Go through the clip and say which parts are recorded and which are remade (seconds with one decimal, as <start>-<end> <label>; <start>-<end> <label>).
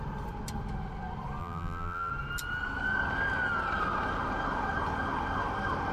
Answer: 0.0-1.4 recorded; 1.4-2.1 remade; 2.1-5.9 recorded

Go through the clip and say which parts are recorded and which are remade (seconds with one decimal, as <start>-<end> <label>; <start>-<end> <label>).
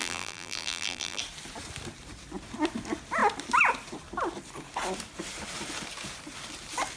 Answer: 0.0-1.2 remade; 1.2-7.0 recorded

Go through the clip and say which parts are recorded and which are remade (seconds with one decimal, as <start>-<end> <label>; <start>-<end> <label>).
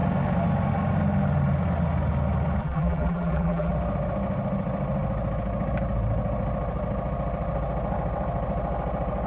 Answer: 0.0-2.6 recorded; 2.6-3.7 remade; 3.7-9.3 recorded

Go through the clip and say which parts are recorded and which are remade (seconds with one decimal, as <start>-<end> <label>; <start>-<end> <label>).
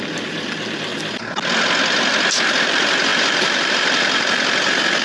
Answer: 0.0-0.9 remade; 0.9-2.6 recorded; 2.6-5.0 remade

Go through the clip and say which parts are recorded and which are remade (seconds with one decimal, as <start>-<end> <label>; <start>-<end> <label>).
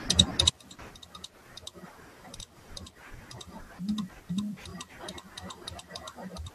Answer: 0.0-1.7 recorded; 1.7-3.7 remade; 3.7-4.7 recorded; 4.7-6.5 remade